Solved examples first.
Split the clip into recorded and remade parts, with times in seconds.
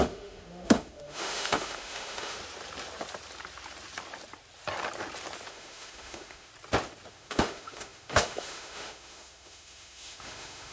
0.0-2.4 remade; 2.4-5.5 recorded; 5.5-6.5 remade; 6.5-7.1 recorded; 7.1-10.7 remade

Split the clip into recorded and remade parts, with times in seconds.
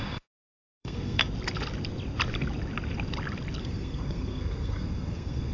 0.0-1.2 remade; 1.2-3.6 recorded; 3.6-5.5 remade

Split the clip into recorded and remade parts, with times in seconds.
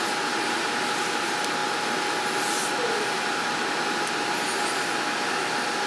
0.0-5.9 recorded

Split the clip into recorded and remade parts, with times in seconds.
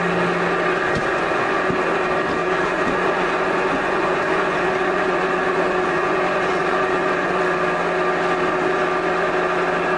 0.0-1.1 recorded; 1.1-1.7 remade; 1.7-2.4 recorded; 2.4-7.4 remade; 7.4-10.0 recorded